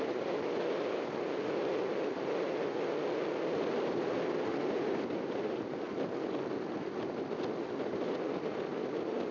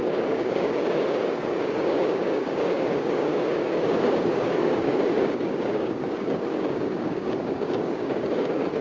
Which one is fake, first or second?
second